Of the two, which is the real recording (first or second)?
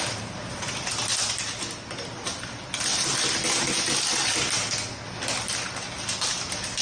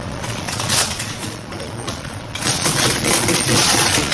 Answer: first